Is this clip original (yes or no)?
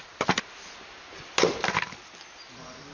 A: yes